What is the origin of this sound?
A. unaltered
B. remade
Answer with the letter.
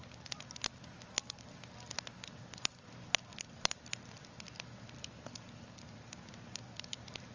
A